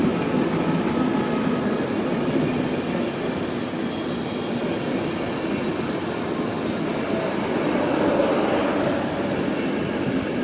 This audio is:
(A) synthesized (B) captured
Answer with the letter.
B